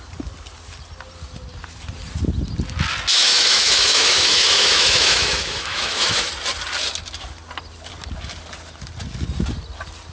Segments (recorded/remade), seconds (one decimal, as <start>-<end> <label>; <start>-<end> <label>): 0.0-3.1 recorded; 3.1-6.3 remade; 6.3-10.1 recorded